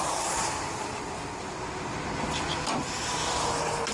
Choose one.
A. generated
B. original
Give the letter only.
B